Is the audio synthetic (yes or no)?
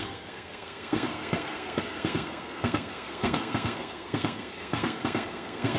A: yes